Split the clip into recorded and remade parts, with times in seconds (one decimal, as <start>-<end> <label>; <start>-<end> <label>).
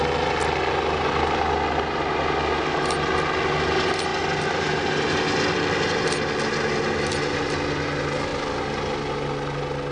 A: 0.0-9.9 recorded